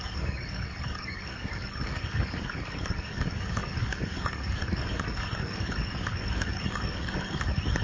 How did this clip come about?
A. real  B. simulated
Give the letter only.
B